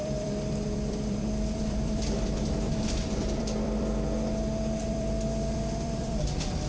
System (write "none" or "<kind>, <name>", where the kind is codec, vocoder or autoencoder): vocoder, BigVGAN v2